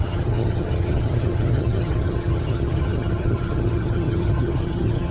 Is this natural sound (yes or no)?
no